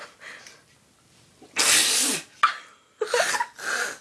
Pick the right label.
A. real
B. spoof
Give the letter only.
A